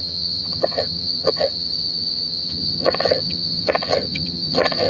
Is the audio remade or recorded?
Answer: remade